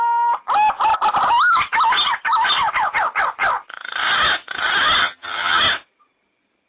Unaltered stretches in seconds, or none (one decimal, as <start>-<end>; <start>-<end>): 0.0-5.0; 5.6-6.7